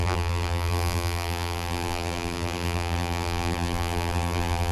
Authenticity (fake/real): fake